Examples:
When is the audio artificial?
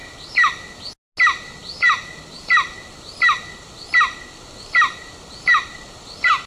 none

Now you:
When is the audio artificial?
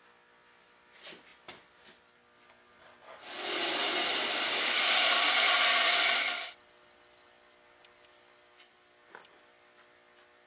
none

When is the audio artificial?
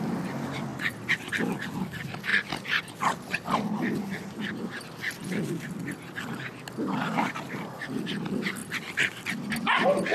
0.7-1.3 (vocoder, BigVGAN v2); 5.2-5.8; 8.6-9.3